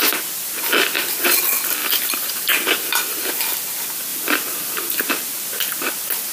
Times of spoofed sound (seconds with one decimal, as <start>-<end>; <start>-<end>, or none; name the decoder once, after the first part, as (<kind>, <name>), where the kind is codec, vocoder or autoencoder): 1.8-3.3 (vocoder, BigVGAN v2); 4.1-4.9